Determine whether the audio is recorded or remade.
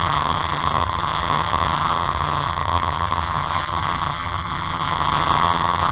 remade